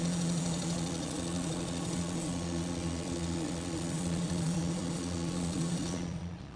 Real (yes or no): no